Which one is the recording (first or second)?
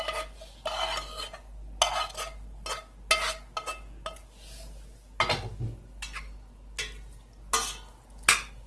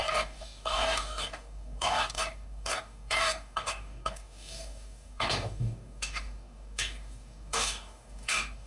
first